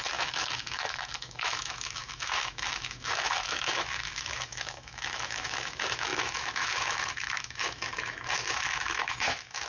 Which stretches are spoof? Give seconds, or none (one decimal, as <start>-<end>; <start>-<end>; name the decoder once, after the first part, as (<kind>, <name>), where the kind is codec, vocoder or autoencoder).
0.0-9.7 (autoencoder, DAC-VAE)

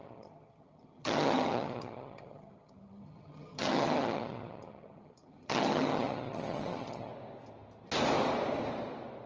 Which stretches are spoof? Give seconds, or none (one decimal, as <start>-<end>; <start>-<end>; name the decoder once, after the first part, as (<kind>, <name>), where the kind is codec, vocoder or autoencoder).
0.0-7.1 (vocoder, HiFi-GAN)

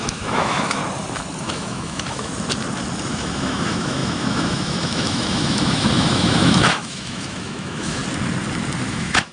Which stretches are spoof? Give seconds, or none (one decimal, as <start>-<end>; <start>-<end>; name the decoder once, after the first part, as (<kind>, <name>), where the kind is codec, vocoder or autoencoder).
0.0-0.8 (autoencoder, DAC-VAE); 1.4-2.3; 3.1-8.0; 8.9-9.3

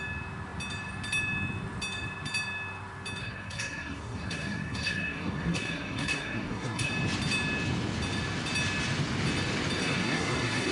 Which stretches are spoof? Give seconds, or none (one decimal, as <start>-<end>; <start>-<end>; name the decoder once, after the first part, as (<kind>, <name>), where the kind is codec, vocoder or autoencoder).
3.2-6.9 (codec, SNAC); 9.8-10.7

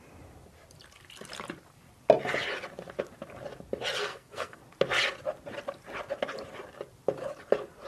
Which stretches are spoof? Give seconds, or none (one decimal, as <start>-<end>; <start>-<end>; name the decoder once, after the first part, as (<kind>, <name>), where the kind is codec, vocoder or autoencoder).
4.0-4.6 (codec, SNAC)

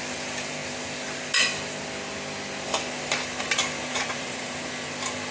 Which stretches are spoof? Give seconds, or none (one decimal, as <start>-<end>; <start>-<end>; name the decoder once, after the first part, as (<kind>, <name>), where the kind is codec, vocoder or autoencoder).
3.9-4.4 (vocoder, Vocos)

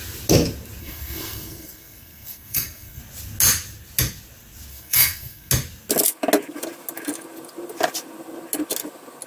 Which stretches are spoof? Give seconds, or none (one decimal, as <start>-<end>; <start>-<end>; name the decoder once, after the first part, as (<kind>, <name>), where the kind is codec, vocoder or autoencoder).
0.8-3.0 (codec, SNAC); 4.7-5.5

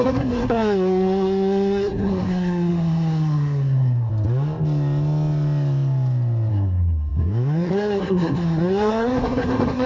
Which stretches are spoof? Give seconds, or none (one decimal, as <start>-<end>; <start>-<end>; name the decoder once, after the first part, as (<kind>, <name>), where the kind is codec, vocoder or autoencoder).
0.0-4.1 (codec, SNAC); 6.5-9.9